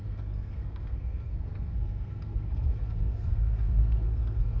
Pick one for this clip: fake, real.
fake